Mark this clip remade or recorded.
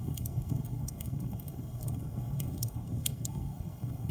remade